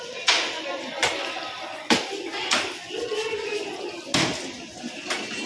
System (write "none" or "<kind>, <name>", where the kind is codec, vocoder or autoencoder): none